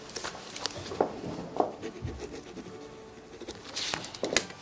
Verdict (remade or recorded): recorded